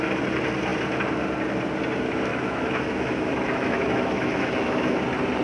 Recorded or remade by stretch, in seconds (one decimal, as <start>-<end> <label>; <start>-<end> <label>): 0.0-2.3 recorded; 2.3-5.0 remade; 5.0-5.4 recorded